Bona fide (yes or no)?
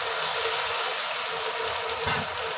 yes